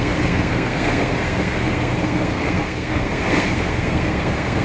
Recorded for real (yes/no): no